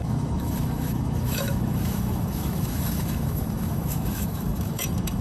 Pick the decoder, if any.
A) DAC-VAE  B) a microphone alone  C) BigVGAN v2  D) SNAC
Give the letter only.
A